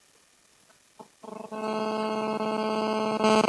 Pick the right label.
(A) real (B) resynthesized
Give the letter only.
A